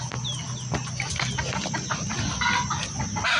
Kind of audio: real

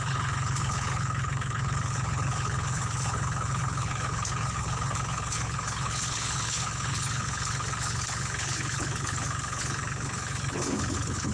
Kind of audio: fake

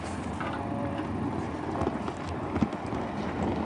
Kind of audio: real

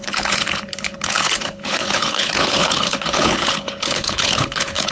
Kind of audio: fake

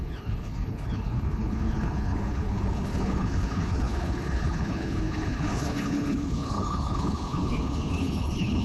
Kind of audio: fake